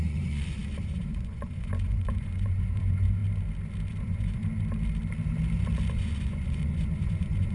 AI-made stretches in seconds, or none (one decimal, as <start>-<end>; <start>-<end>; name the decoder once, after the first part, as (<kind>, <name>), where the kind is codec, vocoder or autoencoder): 0.0-3.2 (vocoder, Vocos); 4.0-4.4; 5.9-7.5

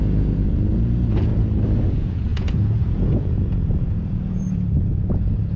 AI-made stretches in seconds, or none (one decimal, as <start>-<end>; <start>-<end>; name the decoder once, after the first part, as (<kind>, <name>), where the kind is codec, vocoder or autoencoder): 0.0-1.3 (vocoder, Vocos); 1.8-5.6

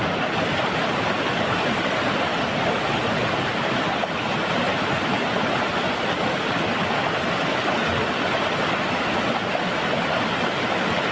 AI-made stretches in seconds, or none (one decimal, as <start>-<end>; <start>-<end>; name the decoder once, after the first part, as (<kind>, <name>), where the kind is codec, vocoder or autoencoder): none

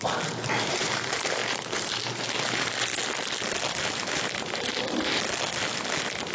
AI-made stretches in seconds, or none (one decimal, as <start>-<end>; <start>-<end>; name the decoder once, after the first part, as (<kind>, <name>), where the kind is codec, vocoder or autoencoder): 0.0-2.9 (vocoder, BigVGAN v2); 4.1-4.7

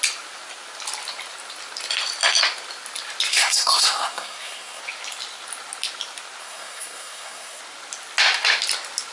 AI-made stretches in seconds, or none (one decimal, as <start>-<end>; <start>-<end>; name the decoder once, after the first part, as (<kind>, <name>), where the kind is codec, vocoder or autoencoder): 3.3-4.8 (codec, SNAC); 6.4-7.6

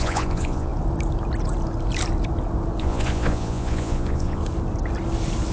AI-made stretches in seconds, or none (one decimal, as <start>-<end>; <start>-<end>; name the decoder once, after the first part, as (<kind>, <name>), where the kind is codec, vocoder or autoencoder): 0.0-0.7 (vocoder, Vocos); 2.8-4.4